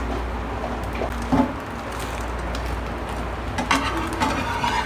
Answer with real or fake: real